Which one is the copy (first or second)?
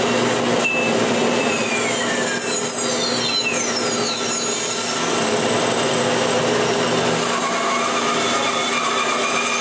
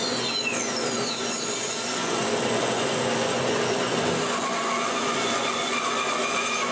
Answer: second